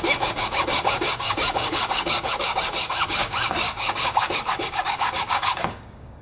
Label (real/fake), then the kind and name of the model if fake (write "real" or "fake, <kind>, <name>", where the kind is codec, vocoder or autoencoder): fake, codec, DAC